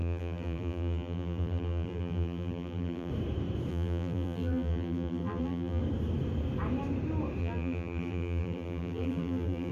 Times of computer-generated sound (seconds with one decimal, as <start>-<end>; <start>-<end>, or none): 0.0-3.1; 3.7-5.8; 7.4-9.7